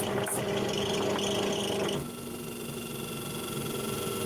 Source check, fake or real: real